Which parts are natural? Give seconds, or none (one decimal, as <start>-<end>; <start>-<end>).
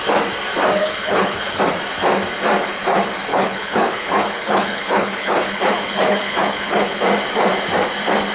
0.0-0.8; 1.6-3.3; 7.0-8.3